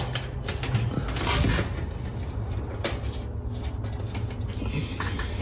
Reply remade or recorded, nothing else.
recorded